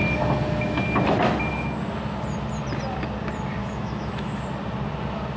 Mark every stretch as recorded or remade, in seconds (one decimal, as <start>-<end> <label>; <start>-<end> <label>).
0.0-3.6 recorded; 3.6-4.4 remade; 4.4-5.4 recorded